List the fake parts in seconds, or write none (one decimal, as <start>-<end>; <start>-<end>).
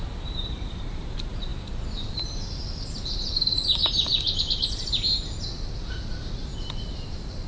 0.0-1.5; 2.1-4.1; 6.1-7.5